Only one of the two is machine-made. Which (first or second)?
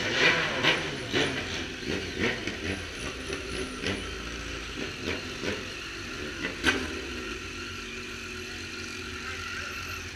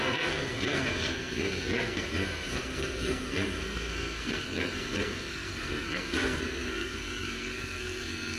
second